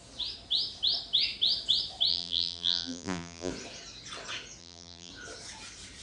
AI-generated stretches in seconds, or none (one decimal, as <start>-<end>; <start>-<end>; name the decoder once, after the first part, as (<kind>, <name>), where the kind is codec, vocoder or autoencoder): 2.1-3.5 (vocoder, BigVGAN v2); 4.6-5.1